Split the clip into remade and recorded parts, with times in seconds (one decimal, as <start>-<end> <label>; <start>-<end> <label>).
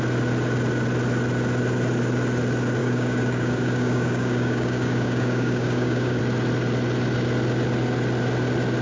0.0-2.8 recorded; 2.8-6.2 remade; 6.2-8.8 recorded